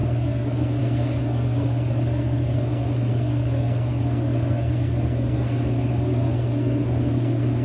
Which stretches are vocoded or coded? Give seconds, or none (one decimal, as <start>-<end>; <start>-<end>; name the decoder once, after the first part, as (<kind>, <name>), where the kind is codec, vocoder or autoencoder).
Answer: 0.0-7.6 (codec, SNAC)